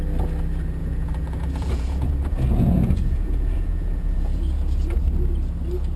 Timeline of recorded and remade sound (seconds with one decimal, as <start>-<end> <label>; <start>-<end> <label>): 0.0-0.8 recorded; 0.8-4.4 remade; 4.4-6.0 recorded